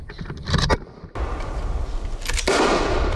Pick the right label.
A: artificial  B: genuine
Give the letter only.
B